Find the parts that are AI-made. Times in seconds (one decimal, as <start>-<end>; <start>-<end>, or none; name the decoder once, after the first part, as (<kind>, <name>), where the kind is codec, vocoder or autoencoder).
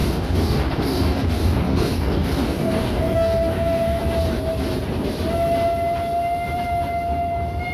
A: 0.0-4.0 (codec, DAC)